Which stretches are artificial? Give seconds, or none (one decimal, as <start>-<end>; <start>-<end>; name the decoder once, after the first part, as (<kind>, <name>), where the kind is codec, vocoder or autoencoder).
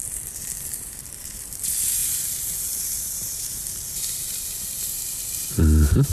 0.0-6.1 (vocoder, BigVGAN v2)